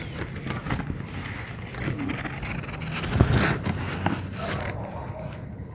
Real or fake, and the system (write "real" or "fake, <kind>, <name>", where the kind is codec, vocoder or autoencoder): real